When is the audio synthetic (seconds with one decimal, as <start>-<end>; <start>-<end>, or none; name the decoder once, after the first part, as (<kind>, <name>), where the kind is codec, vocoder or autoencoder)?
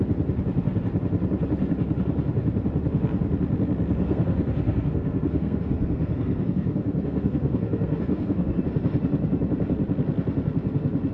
4.0-8.6 (codec, SNAC)